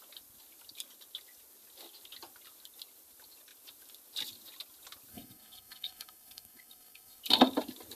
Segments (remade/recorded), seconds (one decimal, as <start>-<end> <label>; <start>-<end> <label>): 0.0-5.1 recorded; 5.1-7.2 remade; 7.2-7.9 recorded